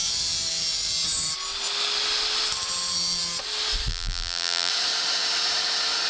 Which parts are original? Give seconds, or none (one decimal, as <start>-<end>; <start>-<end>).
0.0-3.9; 4.7-6.1